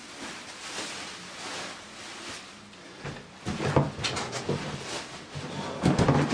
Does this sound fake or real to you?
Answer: real